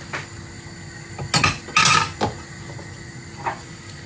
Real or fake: real